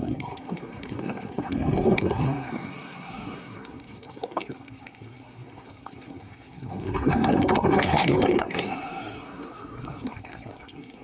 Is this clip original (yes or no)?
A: no